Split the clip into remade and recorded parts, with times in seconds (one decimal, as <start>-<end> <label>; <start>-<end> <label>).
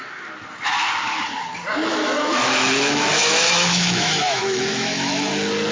0.0-1.9 recorded; 1.9-5.3 remade; 5.3-5.7 recorded